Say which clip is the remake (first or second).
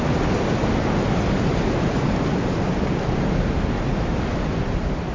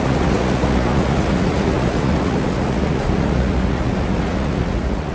second